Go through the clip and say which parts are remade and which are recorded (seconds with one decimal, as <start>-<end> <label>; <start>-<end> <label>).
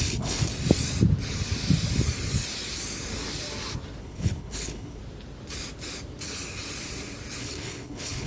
0.0-0.5 remade; 0.5-4.0 recorded; 4.0-5.0 remade; 5.0-7.4 recorded; 7.4-8.3 remade